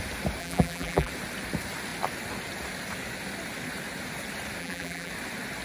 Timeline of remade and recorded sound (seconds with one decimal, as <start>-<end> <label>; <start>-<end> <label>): 0.0-0.4 recorded; 0.4-1.1 remade; 1.1-4.6 recorded; 4.6-5.1 remade; 5.1-5.6 recorded